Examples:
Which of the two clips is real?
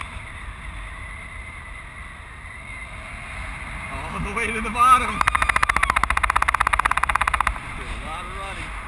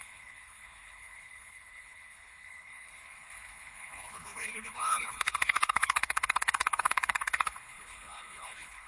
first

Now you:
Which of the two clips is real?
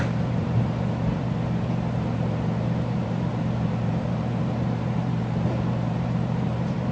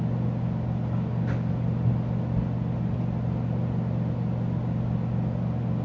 second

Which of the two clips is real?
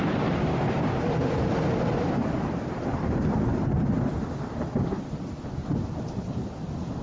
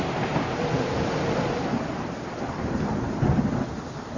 second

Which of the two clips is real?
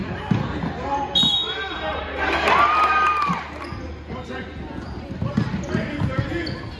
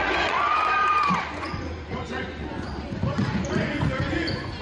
first